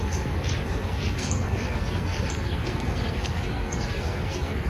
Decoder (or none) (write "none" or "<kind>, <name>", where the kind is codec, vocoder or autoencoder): codec, SNAC